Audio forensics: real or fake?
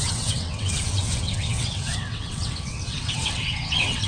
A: fake